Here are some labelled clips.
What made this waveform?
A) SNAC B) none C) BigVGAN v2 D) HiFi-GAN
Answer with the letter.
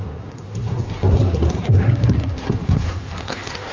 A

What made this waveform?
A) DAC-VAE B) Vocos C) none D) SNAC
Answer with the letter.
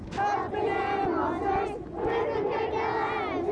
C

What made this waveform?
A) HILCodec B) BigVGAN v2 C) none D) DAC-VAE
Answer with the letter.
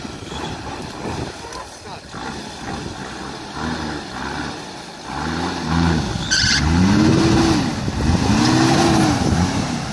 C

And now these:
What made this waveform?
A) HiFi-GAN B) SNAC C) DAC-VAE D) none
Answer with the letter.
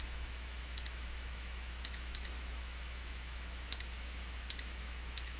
C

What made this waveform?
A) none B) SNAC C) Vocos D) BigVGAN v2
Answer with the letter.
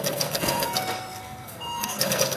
B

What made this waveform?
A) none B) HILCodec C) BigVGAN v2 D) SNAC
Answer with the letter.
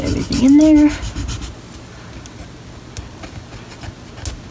A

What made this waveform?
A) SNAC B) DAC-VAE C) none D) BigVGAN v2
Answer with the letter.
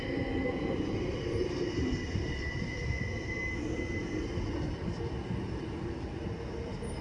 C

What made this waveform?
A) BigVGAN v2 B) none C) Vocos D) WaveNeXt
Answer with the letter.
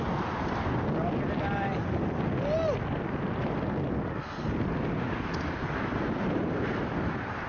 B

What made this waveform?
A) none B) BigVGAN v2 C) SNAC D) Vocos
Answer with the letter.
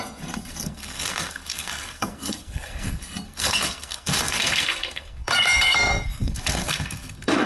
C